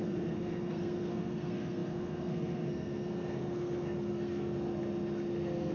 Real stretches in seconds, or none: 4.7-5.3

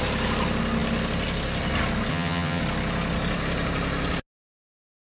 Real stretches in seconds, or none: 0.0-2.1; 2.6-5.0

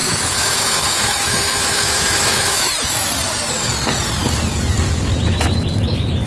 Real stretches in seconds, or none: 3.1-6.3